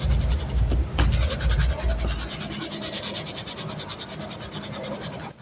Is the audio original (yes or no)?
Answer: yes